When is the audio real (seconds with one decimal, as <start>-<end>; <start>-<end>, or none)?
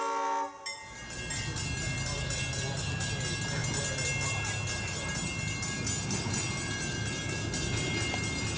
0.0-8.6